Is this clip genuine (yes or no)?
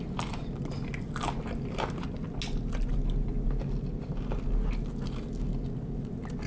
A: yes